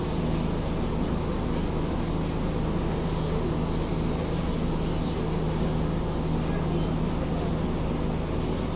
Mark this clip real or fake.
real